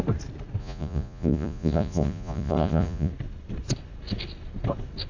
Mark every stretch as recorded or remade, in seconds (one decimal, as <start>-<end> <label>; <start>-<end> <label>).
0.0-0.6 recorded; 0.6-3.1 remade; 3.1-5.1 recorded